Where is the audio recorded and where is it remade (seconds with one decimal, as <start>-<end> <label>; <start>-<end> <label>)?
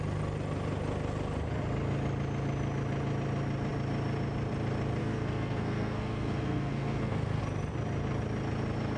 0.0-5.0 recorded; 5.0-7.4 remade; 7.4-9.0 recorded